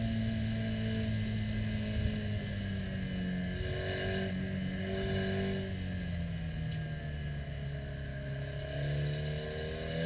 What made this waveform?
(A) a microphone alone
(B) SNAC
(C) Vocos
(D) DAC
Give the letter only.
A